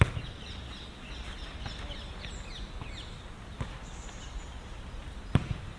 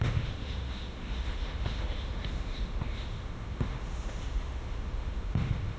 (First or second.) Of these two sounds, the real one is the first